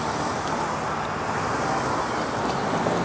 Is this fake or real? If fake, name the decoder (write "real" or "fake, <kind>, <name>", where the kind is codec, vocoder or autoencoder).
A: real